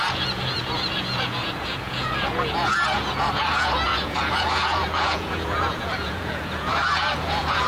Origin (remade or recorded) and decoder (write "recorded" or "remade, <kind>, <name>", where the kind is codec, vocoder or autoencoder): remade, vocoder, Vocos